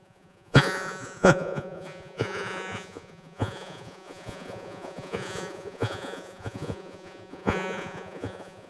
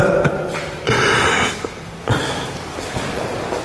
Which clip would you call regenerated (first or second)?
first